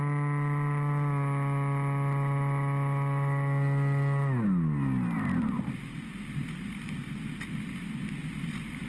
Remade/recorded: recorded